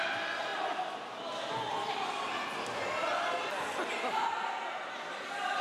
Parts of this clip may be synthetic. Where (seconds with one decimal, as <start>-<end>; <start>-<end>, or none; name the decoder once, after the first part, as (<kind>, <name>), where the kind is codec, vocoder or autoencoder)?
none